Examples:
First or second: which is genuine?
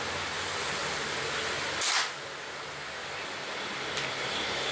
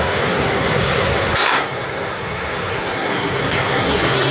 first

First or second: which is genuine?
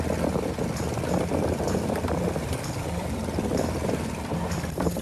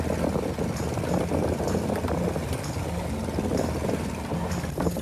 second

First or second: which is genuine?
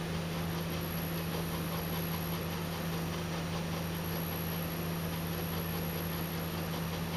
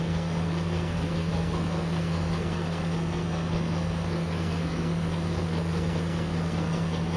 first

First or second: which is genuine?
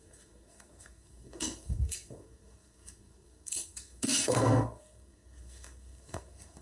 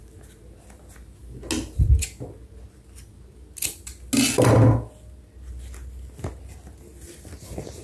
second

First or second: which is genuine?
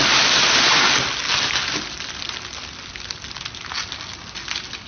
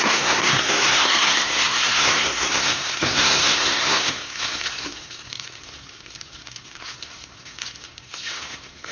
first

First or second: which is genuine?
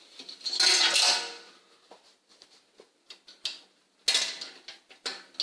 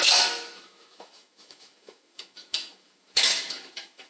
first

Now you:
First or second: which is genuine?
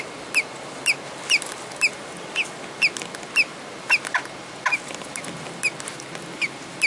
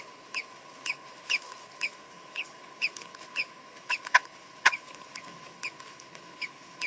first